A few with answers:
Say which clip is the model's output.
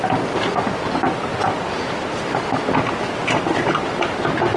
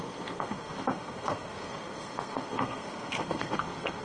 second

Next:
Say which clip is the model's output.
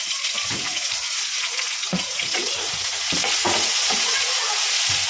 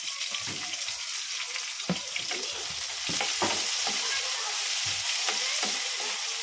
first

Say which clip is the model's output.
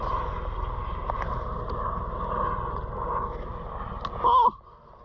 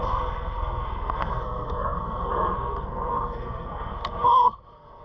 second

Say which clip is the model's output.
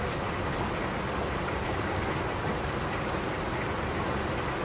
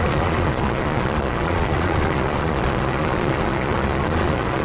second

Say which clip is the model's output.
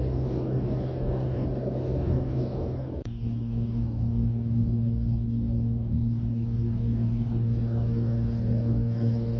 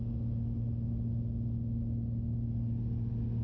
first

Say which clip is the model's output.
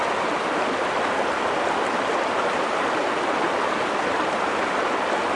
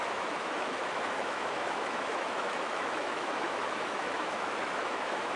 second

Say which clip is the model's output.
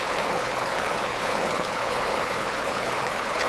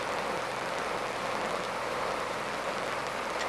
first